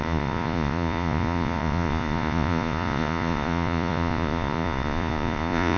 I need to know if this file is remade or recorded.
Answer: remade